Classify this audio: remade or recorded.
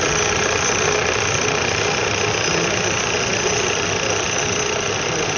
recorded